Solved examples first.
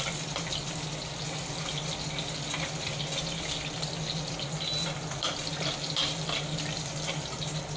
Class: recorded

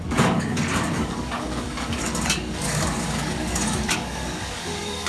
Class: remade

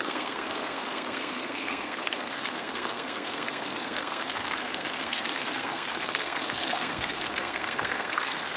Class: remade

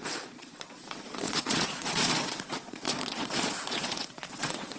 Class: remade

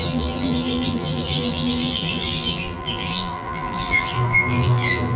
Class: remade